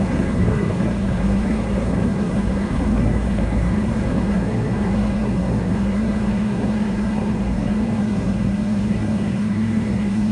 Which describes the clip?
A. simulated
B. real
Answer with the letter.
A